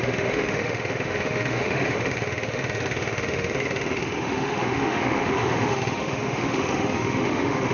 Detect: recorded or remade remade